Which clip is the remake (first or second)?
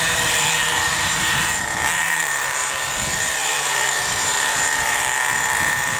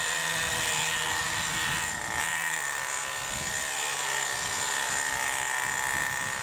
first